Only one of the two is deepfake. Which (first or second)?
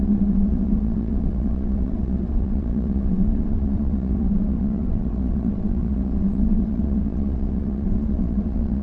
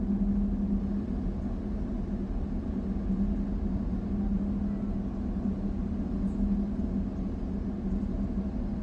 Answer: first